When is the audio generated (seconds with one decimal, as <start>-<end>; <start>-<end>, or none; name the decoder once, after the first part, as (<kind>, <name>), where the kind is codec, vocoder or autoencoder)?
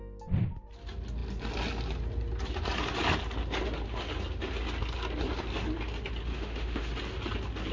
6.3-6.9 (autoencoder, DAC-VAE)